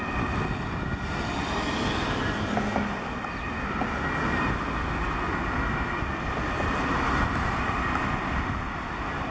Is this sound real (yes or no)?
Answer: yes